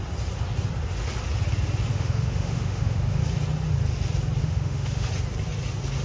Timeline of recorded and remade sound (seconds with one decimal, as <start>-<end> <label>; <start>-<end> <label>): 0.0-1.9 recorded; 1.9-3.2 remade; 3.2-4.4 recorded; 4.4-5.1 remade; 5.1-6.0 recorded